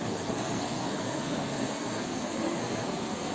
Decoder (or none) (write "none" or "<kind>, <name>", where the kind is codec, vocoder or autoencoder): codec, SNAC